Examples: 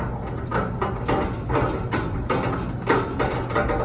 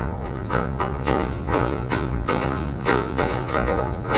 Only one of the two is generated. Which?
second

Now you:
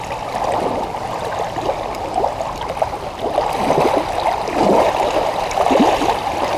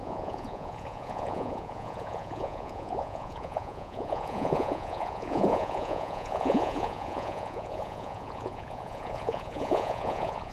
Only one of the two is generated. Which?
second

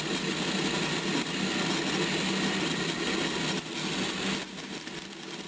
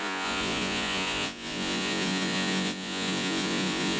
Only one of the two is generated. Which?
second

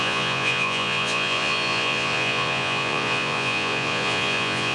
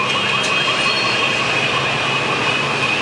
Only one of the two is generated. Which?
first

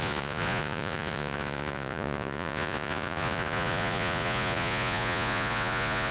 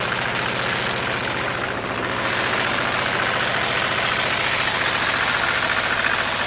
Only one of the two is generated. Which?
first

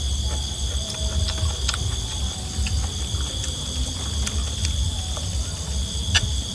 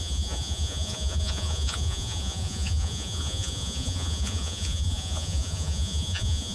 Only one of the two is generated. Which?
second